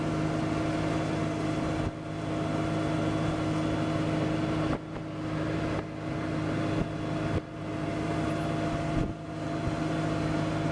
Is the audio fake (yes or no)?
no